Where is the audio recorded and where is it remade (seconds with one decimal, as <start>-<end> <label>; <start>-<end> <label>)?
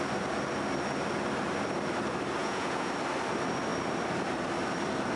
0.0-2.4 recorded; 2.4-2.9 remade; 2.9-5.2 recorded